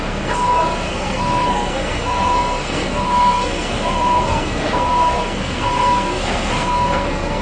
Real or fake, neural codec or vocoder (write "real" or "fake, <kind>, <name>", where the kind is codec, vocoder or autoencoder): fake, codec, SNAC